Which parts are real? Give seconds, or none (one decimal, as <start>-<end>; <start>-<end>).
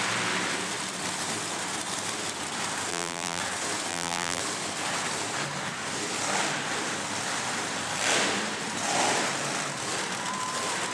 0.0-2.9; 3.4-3.9; 4.4-10.9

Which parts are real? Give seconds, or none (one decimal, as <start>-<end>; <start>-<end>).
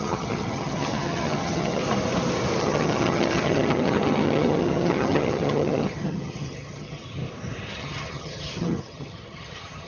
1.8-2.6; 7.2-7.7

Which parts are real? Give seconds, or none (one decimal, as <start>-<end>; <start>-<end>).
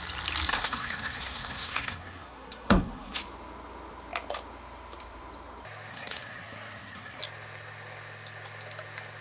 0.0-0.5; 3.2-5.9; 7.2-9.2